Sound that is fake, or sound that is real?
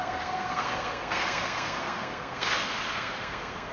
fake